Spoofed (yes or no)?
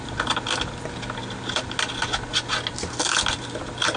no